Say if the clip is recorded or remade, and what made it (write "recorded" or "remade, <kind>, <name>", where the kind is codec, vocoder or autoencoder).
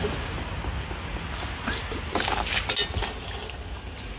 recorded